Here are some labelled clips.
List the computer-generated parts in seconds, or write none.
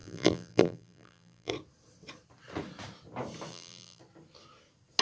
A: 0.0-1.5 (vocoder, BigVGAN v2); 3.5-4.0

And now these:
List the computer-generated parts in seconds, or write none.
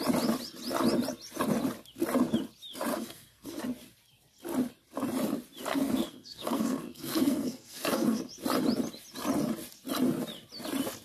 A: 2.9-3.6 (codec, SNAC); 5.7-8.2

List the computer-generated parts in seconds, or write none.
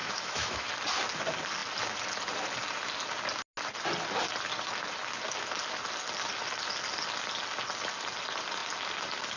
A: 0.0-0.7 (autoencoder, DAC-VAE)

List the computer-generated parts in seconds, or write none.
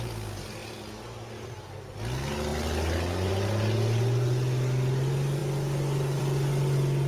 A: none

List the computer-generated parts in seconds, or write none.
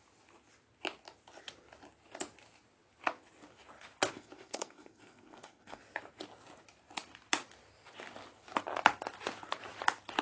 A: 4.1-5.8 (codec, SNAC)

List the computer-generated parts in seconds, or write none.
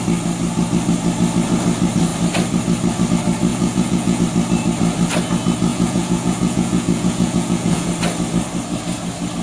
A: 3.5-4.2 (vocoder, Vocos); 5.7-7.9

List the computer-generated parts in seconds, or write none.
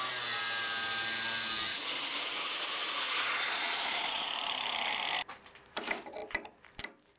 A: 1.7-4.3 (vocoder, Vocos)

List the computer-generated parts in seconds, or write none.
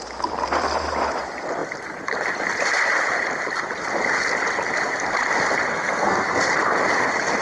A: 5.7-6.4 (codec, SNAC)